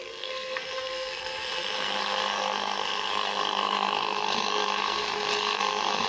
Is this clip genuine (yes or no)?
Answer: no